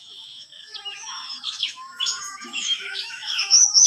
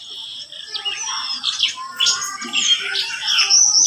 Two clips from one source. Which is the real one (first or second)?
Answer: second